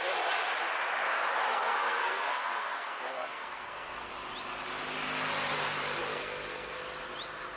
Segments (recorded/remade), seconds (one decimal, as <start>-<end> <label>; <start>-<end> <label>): 0.0-1.5 recorded; 1.5-4.1 remade; 4.1-6.1 recorded; 6.1-6.8 remade; 6.8-7.6 recorded